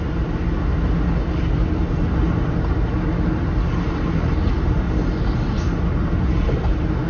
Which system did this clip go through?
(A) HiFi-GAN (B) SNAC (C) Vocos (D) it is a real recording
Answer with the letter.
D